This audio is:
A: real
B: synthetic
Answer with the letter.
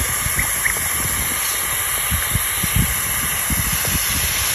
A